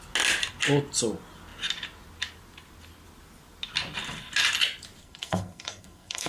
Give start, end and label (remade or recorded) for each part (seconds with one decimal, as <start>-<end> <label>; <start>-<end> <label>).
0.0-5.0 recorded; 5.0-6.3 remade